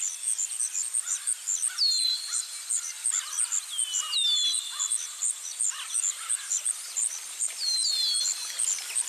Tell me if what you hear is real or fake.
real